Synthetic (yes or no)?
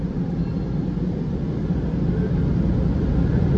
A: no